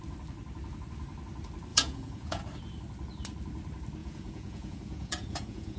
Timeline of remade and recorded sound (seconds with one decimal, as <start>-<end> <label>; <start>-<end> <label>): 0.0-1.7 recorded; 1.7-2.4 remade; 2.4-4.0 recorded; 4.0-5.8 remade